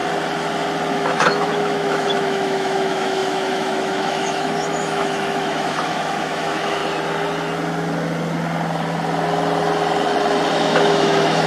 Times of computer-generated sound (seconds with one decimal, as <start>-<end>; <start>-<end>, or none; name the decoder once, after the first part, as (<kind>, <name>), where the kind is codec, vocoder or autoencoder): 0.9-6.8 (autoencoder, DAC-VAE); 10.5-11.5